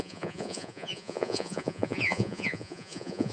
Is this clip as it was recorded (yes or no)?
no